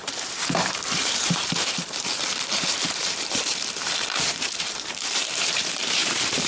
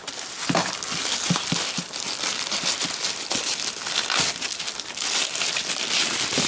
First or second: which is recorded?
second